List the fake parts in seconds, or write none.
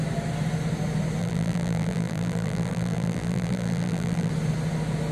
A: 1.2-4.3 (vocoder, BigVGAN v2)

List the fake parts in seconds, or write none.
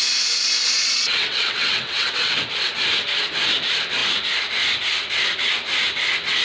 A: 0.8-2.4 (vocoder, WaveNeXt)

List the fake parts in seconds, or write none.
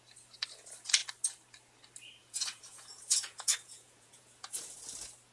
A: 2.2-4.8 (vocoder, Vocos)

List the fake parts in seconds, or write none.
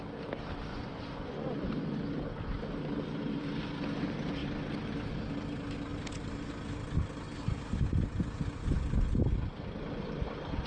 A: 0.7-1.6 (vocoder, Vocos)